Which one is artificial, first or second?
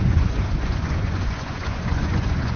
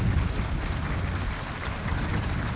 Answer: first